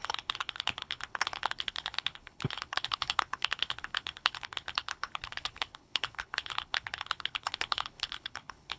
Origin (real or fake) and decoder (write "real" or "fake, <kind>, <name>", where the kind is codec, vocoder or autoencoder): fake, codec, HILCodec